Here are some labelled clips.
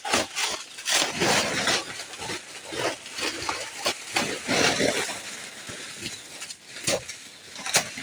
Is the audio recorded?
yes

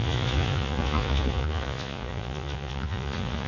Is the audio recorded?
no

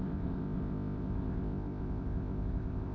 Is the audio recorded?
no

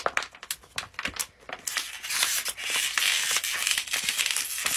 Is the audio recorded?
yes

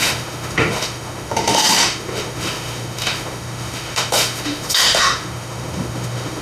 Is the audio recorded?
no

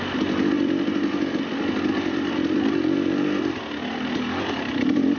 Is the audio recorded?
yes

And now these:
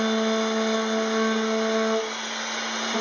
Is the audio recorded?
yes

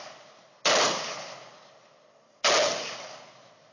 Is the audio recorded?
yes